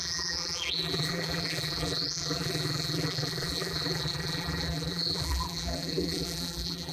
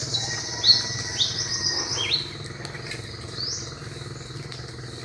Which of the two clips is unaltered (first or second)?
second